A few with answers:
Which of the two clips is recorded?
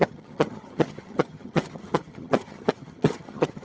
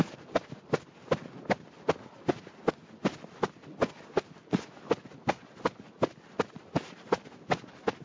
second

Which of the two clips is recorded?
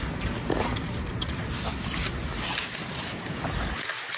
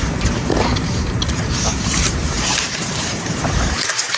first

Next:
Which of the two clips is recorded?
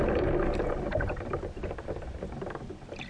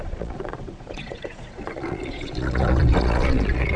first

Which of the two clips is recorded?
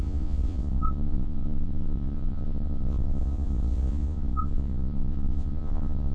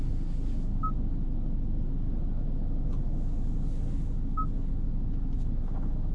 second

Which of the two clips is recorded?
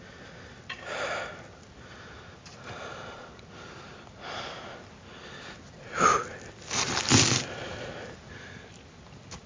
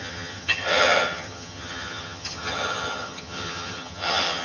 first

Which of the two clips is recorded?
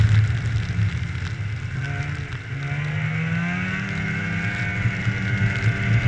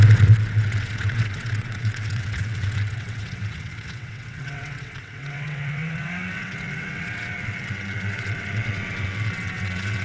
first